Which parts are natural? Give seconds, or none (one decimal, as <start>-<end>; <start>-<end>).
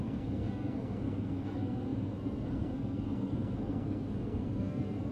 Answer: none